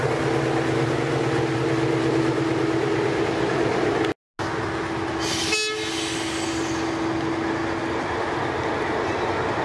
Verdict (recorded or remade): recorded